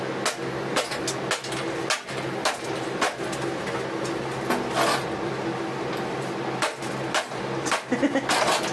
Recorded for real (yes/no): yes